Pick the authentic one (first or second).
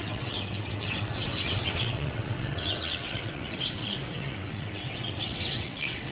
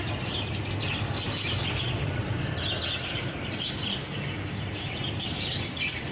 second